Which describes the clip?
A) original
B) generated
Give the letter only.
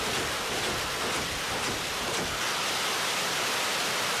A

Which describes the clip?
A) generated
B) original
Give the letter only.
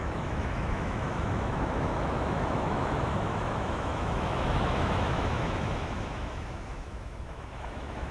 A